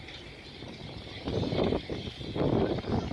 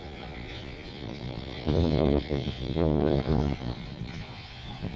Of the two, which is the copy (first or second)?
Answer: second